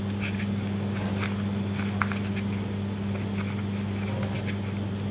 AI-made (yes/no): no